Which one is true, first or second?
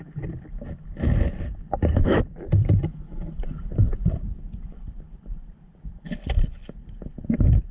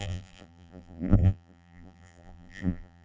first